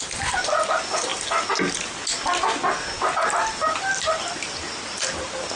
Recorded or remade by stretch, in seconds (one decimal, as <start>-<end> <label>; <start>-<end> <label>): 0.0-5.6 recorded